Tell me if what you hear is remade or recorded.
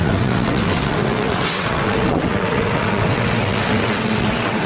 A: remade